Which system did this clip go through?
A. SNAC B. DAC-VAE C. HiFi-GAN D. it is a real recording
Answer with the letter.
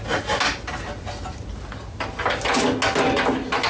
D